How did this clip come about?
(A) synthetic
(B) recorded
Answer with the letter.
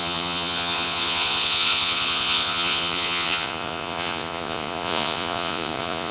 A